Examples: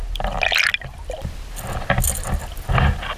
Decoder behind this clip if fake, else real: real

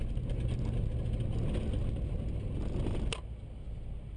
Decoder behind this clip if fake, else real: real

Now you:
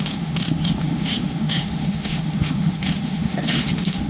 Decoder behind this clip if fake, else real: fake, autoencoder, DAC-VAE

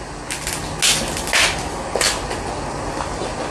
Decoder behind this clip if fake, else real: real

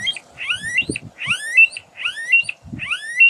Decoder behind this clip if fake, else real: real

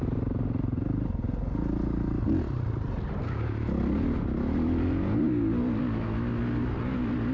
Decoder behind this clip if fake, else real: real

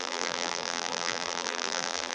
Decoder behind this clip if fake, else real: fake, vocoder, BigVGAN v2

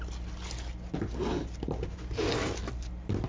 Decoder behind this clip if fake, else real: real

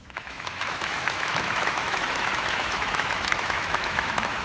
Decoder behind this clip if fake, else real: fake, autoencoder, DAC-VAE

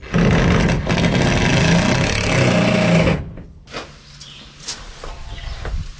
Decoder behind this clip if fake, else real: real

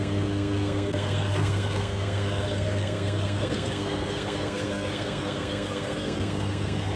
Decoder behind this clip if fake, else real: fake, codec, SNAC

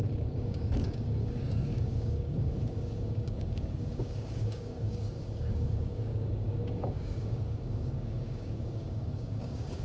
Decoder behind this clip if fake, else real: fake, codec, DAC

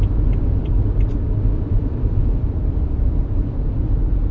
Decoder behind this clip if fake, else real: fake, vocoder, BigVGAN v2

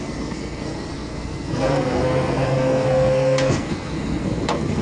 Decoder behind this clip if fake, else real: fake, codec, SNAC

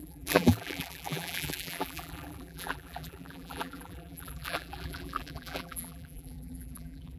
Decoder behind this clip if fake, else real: fake, vocoder, BigVGAN v2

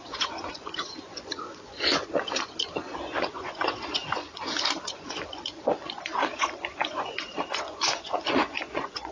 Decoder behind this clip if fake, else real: fake, vocoder, Vocos